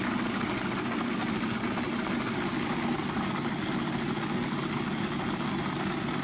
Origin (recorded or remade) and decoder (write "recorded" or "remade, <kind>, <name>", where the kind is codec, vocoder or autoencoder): recorded